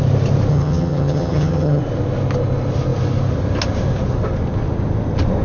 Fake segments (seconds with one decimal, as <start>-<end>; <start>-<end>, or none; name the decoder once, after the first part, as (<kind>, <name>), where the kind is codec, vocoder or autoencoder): 0.5-1.8 (vocoder, HiFi-GAN)